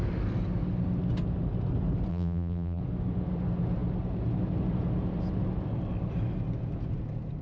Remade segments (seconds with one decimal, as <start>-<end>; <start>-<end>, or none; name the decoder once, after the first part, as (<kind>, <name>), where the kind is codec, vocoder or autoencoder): 2.1-2.8 (vocoder, BigVGAN v2)

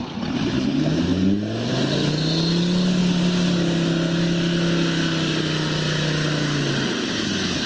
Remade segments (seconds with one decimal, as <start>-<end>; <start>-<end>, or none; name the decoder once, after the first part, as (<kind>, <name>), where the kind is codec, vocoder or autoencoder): none

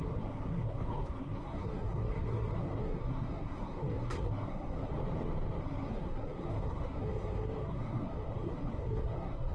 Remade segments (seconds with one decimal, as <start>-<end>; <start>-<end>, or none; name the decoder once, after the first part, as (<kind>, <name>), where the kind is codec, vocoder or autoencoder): 0.0-4.9 (codec, SNAC); 5.6-9.5

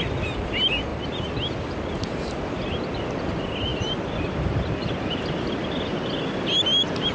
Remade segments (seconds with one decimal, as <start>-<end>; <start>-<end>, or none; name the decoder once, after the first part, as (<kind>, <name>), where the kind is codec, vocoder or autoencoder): 3.7-5.7 (vocoder, BigVGAN v2)